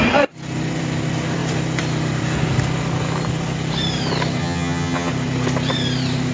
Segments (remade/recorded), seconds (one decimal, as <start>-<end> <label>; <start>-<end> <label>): 0.0-4.4 recorded; 4.4-5.1 remade; 5.1-6.3 recorded